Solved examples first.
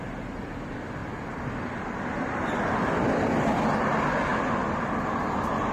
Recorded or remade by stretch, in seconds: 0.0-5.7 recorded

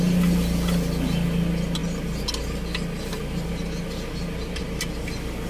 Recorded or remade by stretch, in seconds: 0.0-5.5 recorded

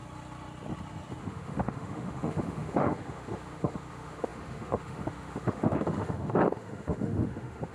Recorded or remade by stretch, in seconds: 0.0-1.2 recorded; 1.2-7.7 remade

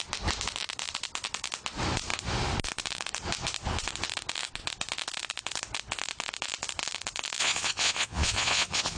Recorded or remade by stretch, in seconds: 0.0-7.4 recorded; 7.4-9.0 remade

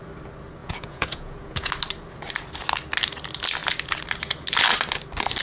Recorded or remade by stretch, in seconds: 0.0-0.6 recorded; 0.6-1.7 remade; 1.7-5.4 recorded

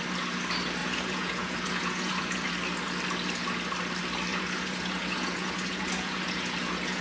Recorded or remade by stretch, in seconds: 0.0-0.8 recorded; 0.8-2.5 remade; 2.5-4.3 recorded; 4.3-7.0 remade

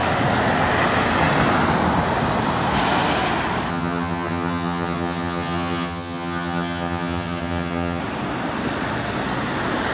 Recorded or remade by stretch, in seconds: 0.0-3.7 recorded; 3.7-8.0 remade; 8.0-9.9 recorded

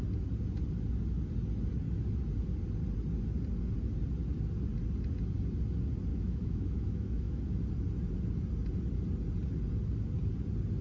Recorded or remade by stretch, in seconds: 0.0-6.1 recorded; 6.1-7.4 remade; 7.4-10.8 recorded